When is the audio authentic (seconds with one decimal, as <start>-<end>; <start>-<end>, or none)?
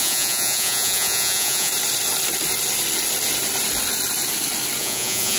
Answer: 1.7-4.8